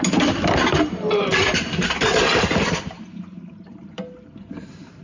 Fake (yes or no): yes